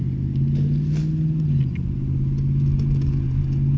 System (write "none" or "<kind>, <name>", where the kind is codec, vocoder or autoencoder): none